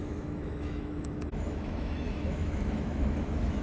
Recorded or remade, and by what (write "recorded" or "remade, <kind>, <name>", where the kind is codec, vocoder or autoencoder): remade, autoencoder, DAC-VAE